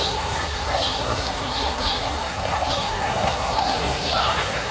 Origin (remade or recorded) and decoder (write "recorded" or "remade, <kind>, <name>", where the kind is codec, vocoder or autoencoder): remade, codec, SNAC